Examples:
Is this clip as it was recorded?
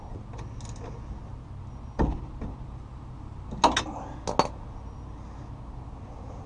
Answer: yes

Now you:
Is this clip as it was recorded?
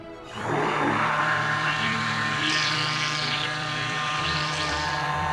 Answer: no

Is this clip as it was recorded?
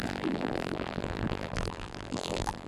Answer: no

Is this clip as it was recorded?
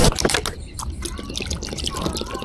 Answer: yes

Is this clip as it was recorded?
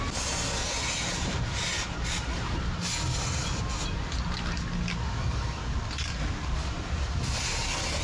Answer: yes